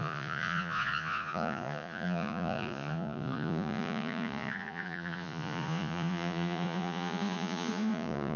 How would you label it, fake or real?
fake